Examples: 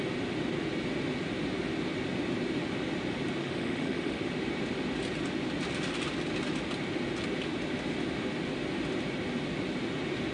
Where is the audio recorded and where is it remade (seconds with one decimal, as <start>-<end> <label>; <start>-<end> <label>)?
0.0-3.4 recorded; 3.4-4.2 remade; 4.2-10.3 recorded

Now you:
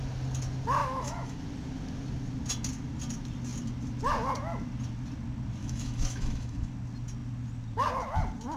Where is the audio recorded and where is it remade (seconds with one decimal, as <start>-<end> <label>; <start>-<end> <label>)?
0.0-0.8 recorded; 0.8-1.4 remade; 1.4-5.6 recorded; 5.6-6.7 remade; 6.7-8.6 recorded

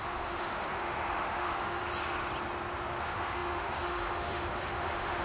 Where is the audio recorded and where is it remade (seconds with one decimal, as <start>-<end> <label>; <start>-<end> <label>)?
0.0-1.8 remade; 1.8-3.0 recorded; 3.0-5.2 remade

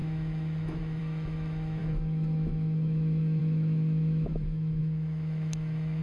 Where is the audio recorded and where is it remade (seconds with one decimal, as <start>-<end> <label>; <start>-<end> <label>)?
0.0-6.0 remade

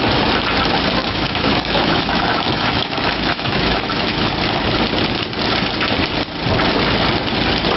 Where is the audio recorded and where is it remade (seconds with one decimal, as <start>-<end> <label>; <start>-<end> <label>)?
0.0-1.0 recorded; 1.0-4.3 remade; 4.3-7.8 recorded

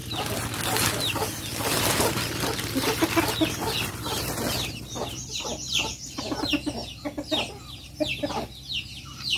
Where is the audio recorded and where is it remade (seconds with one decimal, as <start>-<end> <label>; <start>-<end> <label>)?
0.0-9.4 recorded

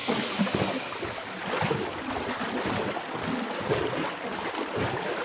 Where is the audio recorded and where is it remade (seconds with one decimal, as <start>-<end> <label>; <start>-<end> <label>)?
0.0-5.2 recorded

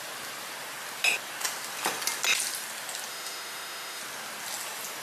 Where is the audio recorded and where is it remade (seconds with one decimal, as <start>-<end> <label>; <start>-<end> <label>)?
0.0-3.1 recorded; 3.1-4.0 remade; 4.0-5.0 recorded